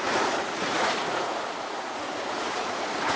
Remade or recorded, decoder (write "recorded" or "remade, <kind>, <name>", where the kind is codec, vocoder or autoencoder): remade, vocoder, Vocos